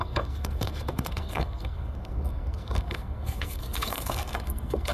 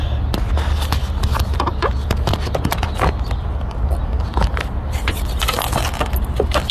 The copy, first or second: first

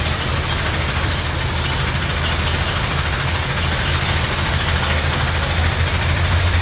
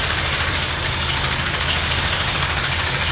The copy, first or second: second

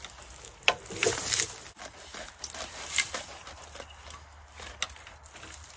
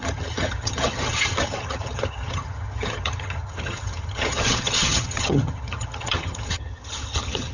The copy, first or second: second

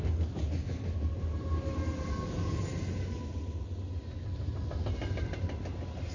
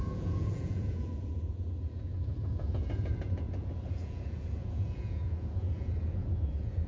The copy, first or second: second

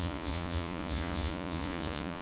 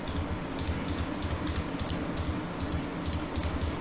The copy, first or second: first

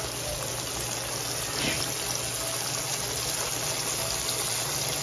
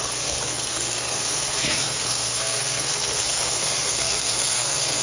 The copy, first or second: second